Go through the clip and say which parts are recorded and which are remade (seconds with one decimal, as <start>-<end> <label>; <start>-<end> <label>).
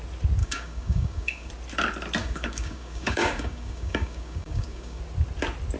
0.0-0.4 recorded; 0.4-1.5 remade; 1.5-2.2 recorded; 2.2-5.0 remade; 5.0-5.8 recorded